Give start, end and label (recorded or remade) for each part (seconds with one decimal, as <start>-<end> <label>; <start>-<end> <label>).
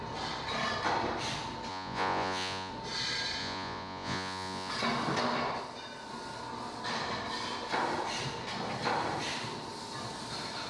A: 0.0-1.7 recorded; 1.7-2.7 remade; 2.7-3.4 recorded; 3.4-4.7 remade; 4.7-10.7 recorded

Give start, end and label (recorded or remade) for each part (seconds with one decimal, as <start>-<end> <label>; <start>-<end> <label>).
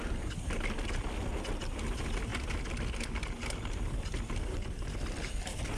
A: 0.0-5.8 recorded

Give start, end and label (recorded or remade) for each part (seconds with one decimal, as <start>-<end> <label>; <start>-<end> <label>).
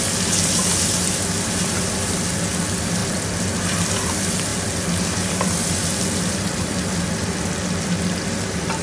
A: 0.0-8.8 recorded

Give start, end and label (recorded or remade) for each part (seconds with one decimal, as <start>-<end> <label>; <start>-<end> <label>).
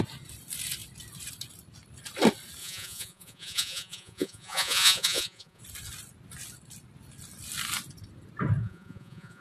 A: 0.0-2.6 recorded; 2.6-5.6 remade; 5.6-8.6 recorded; 8.6-9.4 remade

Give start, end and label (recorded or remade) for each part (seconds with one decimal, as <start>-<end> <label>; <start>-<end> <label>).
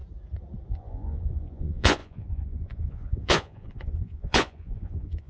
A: 0.0-0.7 recorded; 0.7-5.3 remade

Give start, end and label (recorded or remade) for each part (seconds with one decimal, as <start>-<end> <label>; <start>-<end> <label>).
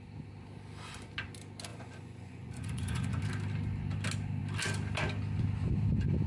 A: 0.0-1.7 recorded; 1.7-3.2 remade; 3.2-6.3 recorded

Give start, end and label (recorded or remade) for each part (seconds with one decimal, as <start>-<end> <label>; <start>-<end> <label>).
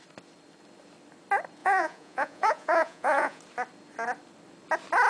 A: 0.0-1.6 recorded; 1.6-3.4 remade; 3.4-5.1 recorded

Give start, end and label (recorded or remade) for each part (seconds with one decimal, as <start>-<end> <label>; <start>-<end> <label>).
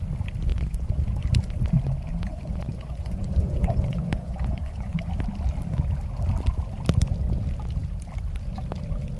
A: 0.0-0.5 recorded; 0.5-1.2 remade; 1.2-2.3 recorded; 2.3-5.0 remade; 5.0-9.2 recorded